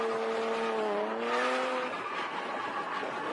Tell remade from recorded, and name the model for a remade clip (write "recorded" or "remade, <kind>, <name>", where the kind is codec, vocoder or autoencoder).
recorded